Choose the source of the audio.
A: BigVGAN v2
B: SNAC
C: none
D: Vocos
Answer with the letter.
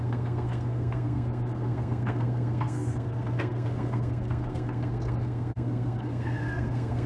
B